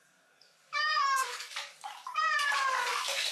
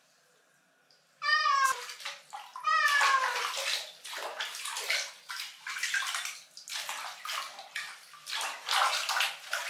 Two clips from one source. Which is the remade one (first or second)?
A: first